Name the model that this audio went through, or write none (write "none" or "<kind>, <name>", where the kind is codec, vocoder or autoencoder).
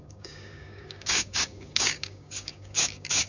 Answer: codec, DAC